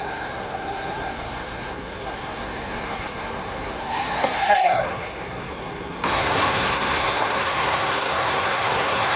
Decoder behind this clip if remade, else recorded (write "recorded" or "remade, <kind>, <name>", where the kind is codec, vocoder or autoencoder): remade, codec, SNAC